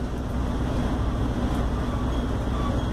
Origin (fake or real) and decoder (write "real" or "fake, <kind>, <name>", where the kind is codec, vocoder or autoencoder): real